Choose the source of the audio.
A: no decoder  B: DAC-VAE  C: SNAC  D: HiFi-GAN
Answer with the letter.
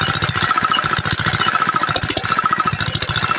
A